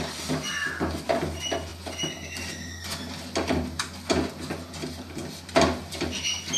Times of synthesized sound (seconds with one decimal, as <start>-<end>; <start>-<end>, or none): none